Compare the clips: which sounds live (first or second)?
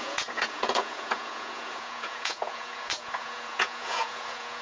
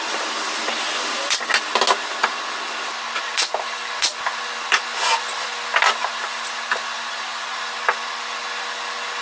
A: second